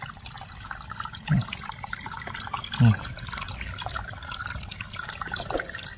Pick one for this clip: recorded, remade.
recorded